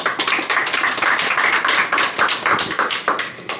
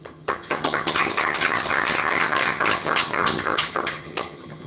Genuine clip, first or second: first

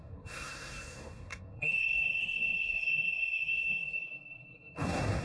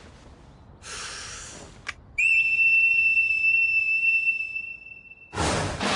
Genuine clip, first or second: second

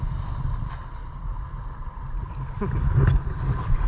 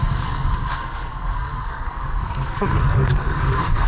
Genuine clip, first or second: first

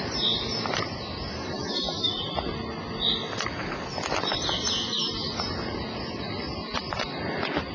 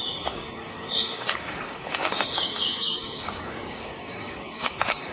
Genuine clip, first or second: first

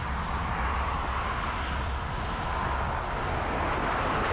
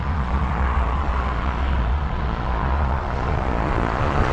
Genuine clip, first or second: first